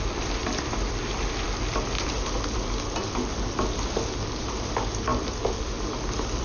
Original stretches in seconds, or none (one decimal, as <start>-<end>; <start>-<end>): 0.0-6.4